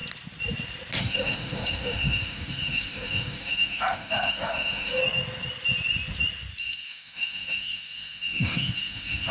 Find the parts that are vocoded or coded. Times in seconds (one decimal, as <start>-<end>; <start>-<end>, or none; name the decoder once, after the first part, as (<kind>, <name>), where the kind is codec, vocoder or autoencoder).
1.0-5.0 (autoencoder, DAC-VAE); 6.6-9.3